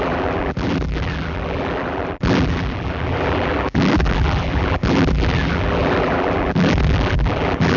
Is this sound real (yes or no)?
no